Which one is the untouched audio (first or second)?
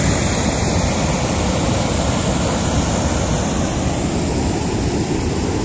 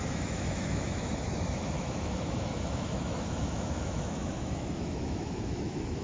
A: first